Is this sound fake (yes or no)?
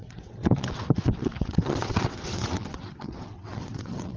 yes